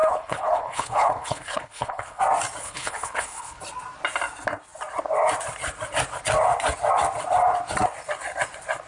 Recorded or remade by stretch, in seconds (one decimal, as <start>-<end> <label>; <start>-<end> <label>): 0.0-2.2 remade; 2.2-2.6 recorded; 2.6-3.6 remade; 3.6-8.9 recorded